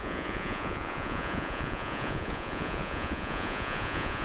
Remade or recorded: remade